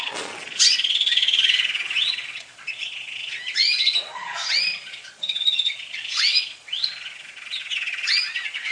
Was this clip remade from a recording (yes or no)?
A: yes